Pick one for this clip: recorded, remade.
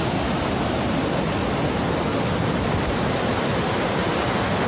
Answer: recorded